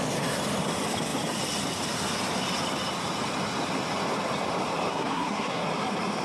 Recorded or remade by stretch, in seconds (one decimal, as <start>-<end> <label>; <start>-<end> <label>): 0.0-4.9 recorded; 4.9-5.6 remade; 5.6-6.2 recorded